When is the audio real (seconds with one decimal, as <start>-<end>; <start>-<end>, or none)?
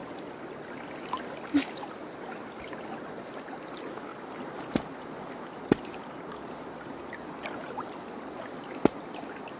0.0-4.1; 8.4-9.6